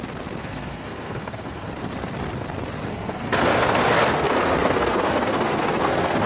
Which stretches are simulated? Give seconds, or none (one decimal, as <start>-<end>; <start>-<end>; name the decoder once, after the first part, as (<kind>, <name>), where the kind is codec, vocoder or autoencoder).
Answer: 0.4-1.7 (codec, SNAC); 2.9-6.3

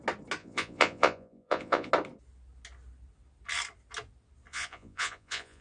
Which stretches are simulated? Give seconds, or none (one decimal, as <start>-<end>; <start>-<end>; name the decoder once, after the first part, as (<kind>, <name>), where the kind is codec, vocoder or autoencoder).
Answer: 0.4-1.9 (vocoder, Vocos); 4.5-5.6

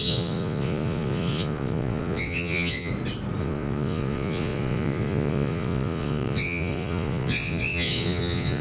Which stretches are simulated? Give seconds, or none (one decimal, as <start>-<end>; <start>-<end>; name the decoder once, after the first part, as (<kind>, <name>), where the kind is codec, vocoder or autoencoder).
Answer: 0.0-2.9 (vocoder, Vocos); 3.4-8.6

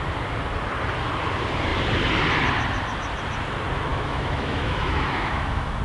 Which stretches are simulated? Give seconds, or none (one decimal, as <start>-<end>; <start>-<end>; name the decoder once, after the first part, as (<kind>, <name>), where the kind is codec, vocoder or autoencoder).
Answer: 3.9-5.8 (autoencoder, DAC-VAE)

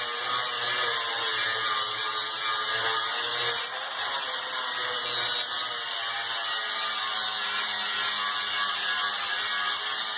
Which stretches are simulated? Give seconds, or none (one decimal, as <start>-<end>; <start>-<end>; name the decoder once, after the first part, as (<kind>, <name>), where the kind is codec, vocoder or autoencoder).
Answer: none

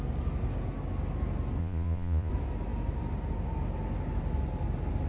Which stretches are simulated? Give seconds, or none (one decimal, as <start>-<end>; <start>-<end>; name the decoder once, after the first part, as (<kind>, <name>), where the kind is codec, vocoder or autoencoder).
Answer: 1.6-2.3 (vocoder, Vocos)

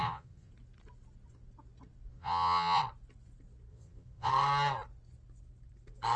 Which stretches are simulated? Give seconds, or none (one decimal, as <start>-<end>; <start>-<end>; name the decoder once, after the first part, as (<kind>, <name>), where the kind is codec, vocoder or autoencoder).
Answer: 0.0-0.5 (vocoder, Vocos); 2.1-2.8; 3.7-4.3